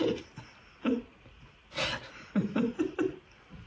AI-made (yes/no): no